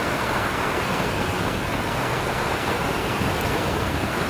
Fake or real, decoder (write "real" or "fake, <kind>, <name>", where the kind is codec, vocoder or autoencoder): fake, codec, SNAC